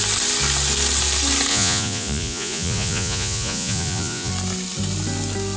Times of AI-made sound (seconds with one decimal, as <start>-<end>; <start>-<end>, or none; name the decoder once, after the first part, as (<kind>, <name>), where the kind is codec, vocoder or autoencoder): 1.5-4.3 (vocoder, Vocos)